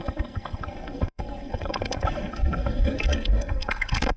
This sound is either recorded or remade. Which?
remade